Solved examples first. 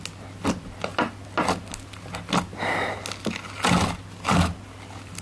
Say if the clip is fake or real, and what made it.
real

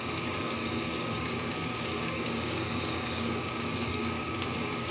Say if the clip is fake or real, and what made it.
fake, codec, DAC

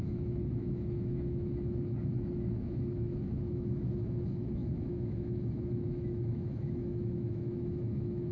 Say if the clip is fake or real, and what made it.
fake, autoencoder, DAC-VAE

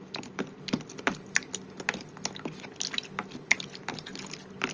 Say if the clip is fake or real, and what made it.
real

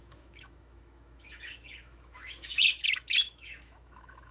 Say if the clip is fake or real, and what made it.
fake, autoencoder, DAC-VAE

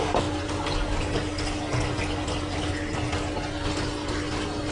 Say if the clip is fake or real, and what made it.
real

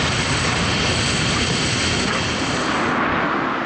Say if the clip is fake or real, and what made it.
real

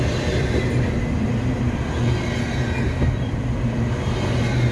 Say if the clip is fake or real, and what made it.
real